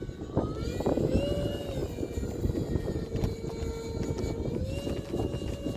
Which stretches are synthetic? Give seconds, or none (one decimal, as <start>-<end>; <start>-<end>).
none